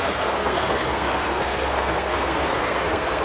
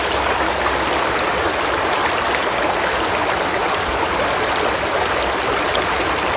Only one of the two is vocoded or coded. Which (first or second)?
first